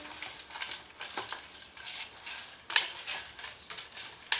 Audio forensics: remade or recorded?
recorded